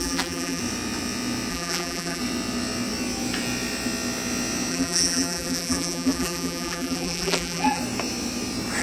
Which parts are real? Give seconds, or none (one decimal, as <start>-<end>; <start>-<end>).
0.6-1.5; 2.2-4.7; 7.8-8.8